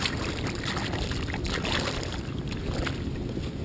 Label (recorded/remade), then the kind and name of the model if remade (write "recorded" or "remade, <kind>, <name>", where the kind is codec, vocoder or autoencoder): recorded